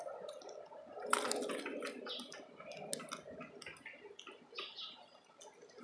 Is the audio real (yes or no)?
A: yes